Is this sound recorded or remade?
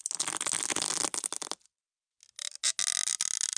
recorded